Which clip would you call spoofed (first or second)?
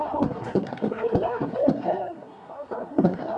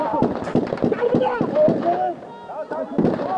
first